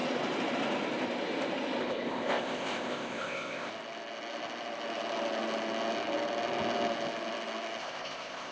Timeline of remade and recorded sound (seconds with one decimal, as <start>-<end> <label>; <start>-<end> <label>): 0.0-1.8 recorded; 1.8-3.7 remade; 3.7-7.8 recorded; 7.8-8.5 remade